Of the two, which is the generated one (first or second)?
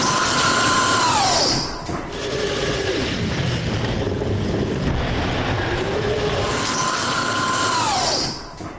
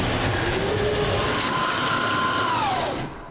first